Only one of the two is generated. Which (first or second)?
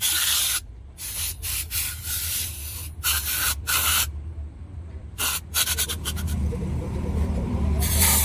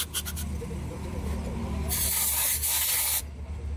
first